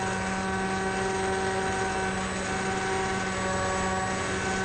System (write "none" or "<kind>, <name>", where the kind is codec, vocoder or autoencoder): none